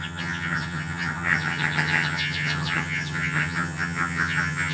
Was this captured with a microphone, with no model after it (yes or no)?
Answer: no